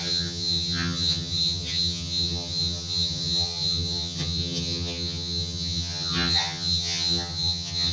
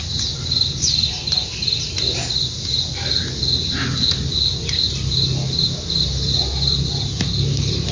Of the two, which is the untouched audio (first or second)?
second